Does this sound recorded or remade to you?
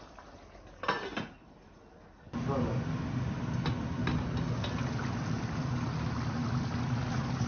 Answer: recorded